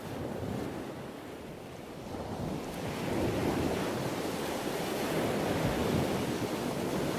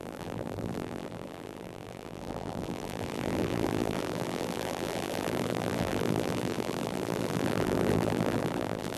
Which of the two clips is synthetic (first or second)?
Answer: second